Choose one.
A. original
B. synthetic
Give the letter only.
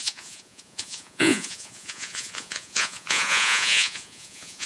B